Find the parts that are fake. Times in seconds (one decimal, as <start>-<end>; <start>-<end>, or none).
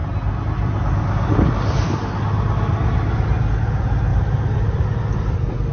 none